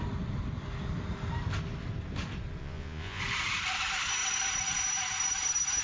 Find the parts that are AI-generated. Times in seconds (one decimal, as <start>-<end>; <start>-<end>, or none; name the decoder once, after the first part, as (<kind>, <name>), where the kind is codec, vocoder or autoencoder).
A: 2.6-3.2 (vocoder, Vocos)